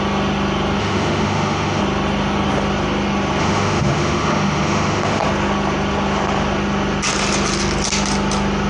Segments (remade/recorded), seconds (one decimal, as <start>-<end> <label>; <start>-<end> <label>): 0.0-0.8 recorded; 0.8-1.8 remade; 1.8-3.4 recorded; 3.4-5.2 remade; 5.2-8.7 recorded